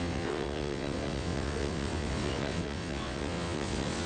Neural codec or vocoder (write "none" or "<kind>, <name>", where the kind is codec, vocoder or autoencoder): vocoder, WaveNeXt